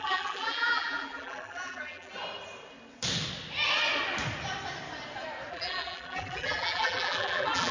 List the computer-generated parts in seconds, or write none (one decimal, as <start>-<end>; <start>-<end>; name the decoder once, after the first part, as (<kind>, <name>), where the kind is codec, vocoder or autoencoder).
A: 0.0-2.1 (vocoder, BigVGAN v2); 5.5-7.7